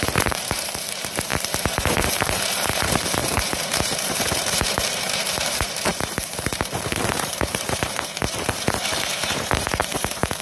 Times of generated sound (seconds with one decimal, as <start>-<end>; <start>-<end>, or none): 0.0-10.4